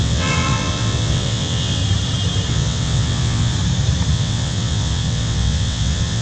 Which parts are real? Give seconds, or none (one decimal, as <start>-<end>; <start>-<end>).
1.8-2.5; 3.5-4.1